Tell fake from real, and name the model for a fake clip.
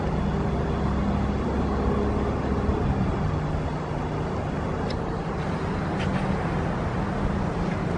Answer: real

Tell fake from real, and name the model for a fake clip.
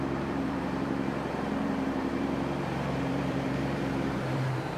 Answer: fake, vocoder, BigVGAN v2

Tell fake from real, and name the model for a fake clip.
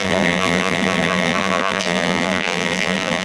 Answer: fake, vocoder, BigVGAN v2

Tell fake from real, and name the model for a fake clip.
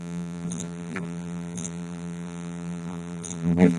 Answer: fake, vocoder, BigVGAN v2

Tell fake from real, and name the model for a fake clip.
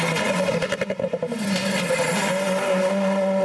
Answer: real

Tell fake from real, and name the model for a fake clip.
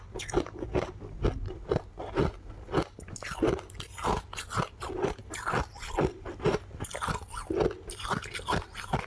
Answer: real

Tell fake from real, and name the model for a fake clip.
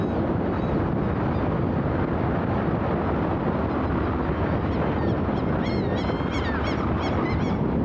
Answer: real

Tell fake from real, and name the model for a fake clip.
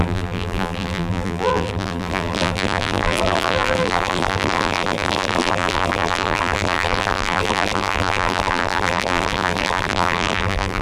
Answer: fake, vocoder, BigVGAN v2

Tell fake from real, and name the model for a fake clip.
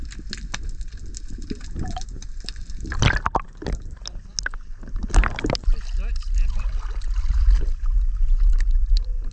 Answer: real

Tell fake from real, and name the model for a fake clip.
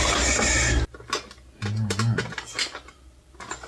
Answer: real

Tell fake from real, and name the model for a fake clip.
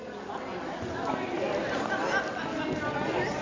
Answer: real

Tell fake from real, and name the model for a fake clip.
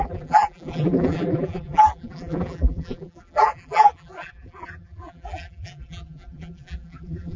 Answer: fake, vocoder, BigVGAN v2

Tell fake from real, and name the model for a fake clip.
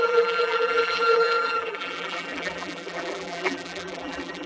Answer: fake, vocoder, BigVGAN v2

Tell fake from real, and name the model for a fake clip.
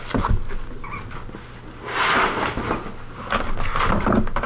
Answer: real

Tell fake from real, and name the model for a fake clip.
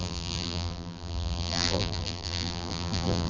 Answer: fake, vocoder, BigVGAN v2